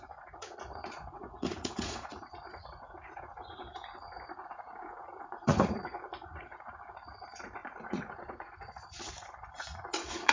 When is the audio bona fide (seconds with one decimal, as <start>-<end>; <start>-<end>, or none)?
none